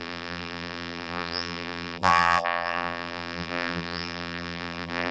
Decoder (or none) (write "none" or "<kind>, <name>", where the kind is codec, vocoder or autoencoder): vocoder, BigVGAN v2